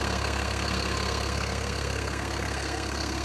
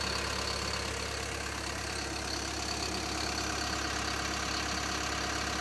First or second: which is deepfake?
first